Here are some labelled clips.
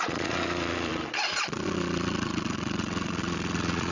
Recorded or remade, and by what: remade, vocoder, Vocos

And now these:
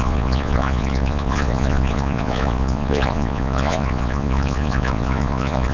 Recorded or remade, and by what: remade, vocoder, Vocos